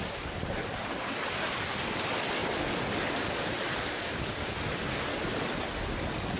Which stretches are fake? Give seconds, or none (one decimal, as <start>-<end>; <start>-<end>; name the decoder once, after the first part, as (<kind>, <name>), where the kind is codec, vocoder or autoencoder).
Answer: none